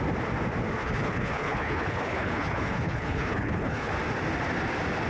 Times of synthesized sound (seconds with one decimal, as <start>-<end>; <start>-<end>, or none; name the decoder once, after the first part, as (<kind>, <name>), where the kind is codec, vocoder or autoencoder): 0.8-3.9 (codec, HILCodec)